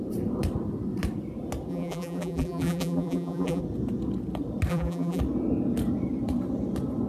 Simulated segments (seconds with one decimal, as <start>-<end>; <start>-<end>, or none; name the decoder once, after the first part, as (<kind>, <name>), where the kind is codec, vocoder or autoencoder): 1.7-3.6 (vocoder, BigVGAN v2); 4.7-5.2